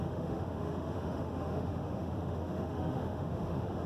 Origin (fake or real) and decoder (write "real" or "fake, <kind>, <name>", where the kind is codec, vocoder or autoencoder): fake, autoencoder, DAC-VAE